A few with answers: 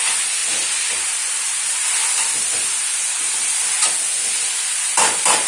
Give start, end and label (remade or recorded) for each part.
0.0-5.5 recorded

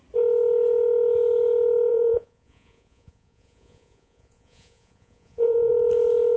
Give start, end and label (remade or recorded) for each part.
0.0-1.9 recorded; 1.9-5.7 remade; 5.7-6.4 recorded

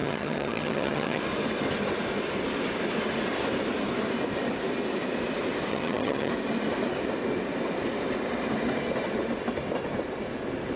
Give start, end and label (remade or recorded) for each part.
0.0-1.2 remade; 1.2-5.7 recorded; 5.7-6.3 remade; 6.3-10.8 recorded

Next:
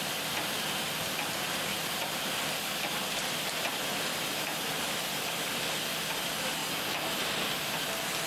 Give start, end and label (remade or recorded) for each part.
0.0-6.6 remade; 6.6-7.2 recorded; 7.2-8.3 remade

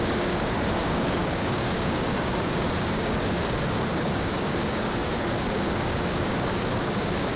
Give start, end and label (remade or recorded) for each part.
0.0-7.4 remade

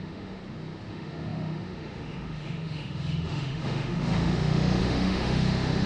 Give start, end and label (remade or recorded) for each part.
0.0-0.4 remade; 0.4-0.9 recorded; 0.9-5.9 remade

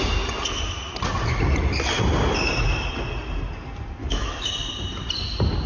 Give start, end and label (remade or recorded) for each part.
0.0-4.0 recorded; 4.0-4.5 remade; 4.5-5.7 recorded

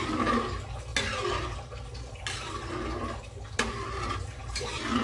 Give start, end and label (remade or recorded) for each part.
0.0-0.9 remade; 0.9-3.7 recorded; 3.7-5.0 remade